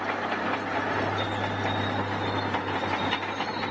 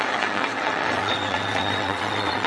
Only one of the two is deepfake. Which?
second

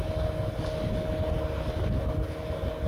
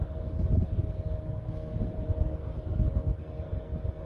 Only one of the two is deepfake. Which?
second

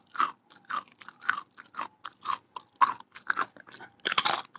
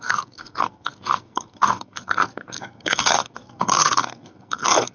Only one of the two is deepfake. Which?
second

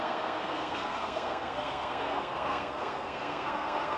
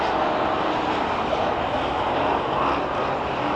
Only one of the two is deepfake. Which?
first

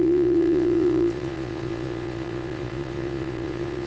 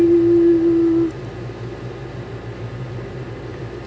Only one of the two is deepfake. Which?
first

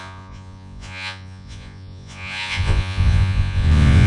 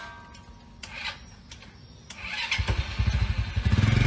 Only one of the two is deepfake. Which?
first